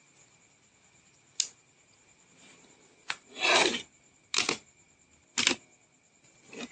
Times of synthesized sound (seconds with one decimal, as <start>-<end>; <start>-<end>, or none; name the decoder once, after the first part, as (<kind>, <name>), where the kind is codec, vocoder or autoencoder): none